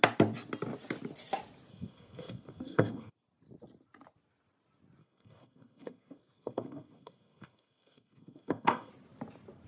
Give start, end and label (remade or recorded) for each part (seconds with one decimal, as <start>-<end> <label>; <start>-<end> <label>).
0.0-1.7 recorded; 1.7-3.1 remade; 3.1-5.0 recorded; 5.0-8.9 remade; 8.9-9.7 recorded